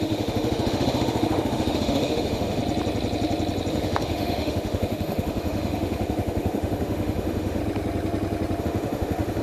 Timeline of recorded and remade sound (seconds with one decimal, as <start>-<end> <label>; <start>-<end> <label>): 0.0-2.6 remade; 2.6-3.7 recorded; 3.7-7.6 remade; 7.6-8.6 recorded; 8.6-9.4 remade

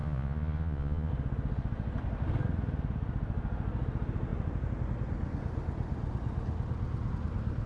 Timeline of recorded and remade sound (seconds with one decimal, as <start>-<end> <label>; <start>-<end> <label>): 0.0-1.1 remade; 1.1-7.7 recorded

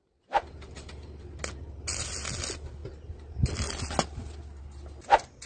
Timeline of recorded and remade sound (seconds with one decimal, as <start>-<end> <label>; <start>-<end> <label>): 0.0-5.5 recorded

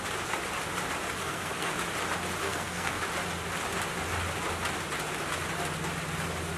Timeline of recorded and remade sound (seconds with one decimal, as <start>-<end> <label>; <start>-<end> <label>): 0.0-1.2 recorded; 1.2-1.7 remade; 1.7-2.4 recorded; 2.4-3.0 remade; 3.0-6.6 recorded

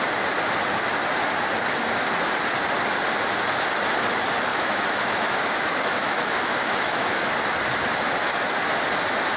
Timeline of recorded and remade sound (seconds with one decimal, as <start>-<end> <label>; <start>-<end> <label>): 0.0-4.5 recorded; 4.5-7.2 remade; 7.2-9.4 recorded

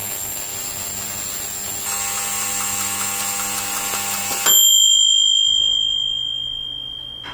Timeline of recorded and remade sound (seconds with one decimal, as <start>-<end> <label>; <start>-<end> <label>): 0.0-7.3 recorded